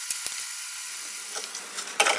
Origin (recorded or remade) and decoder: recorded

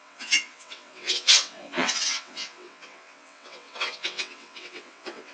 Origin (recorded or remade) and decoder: remade, vocoder, WaveNeXt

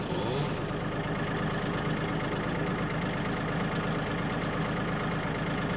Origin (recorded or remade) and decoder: recorded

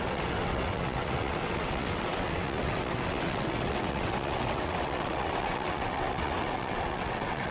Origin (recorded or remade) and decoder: remade, vocoder, WaveNeXt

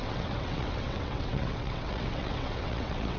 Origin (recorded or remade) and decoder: remade, vocoder, WaveNeXt